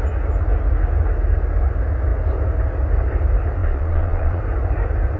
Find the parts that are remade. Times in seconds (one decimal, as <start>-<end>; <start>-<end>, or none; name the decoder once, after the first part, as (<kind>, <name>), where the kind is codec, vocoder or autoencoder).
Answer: 3.6-4.4 (vocoder, Vocos)